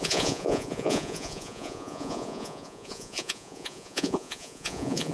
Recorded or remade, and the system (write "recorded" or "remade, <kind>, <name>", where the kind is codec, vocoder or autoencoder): remade, vocoder, Vocos